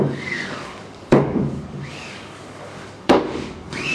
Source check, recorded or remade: remade